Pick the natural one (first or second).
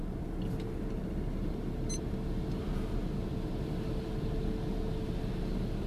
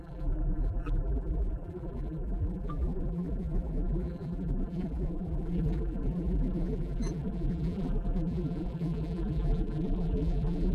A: first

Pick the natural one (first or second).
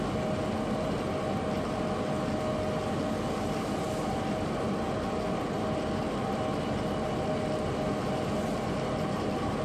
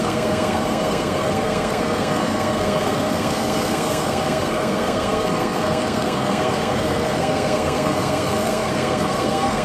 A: first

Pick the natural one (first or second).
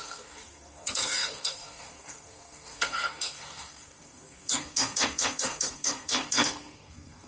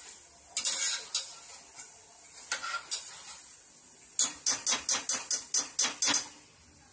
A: second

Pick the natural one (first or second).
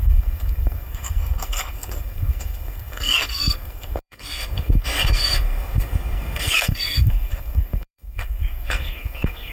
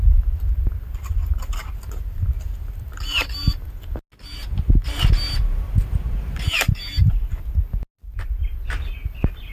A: second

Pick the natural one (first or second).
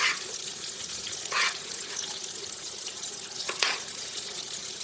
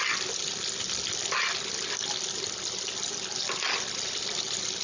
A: second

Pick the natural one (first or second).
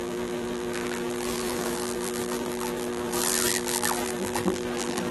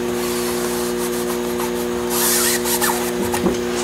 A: second